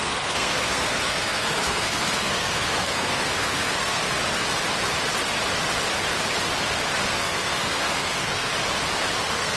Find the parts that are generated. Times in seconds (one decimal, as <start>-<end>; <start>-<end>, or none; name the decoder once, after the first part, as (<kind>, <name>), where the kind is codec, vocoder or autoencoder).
0.0-4.0 (codec, SNAC); 7.1-8.5; 9.2-9.6